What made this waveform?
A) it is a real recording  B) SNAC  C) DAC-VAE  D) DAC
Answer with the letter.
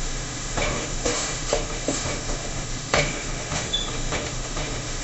C